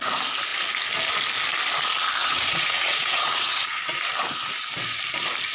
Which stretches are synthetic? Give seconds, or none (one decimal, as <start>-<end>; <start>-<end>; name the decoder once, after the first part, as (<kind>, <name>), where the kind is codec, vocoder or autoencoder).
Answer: 2.2-4.0 (vocoder, WaveNeXt)